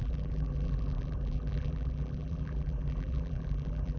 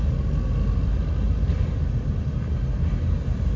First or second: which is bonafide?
second